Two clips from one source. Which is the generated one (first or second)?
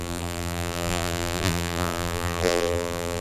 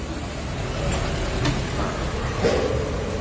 first